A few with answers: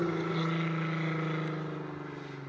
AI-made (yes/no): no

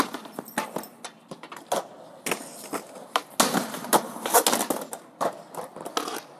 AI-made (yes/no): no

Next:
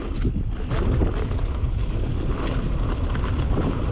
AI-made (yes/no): no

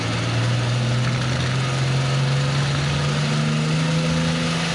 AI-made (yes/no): no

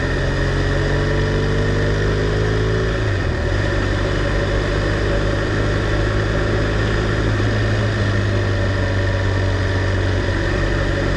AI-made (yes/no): no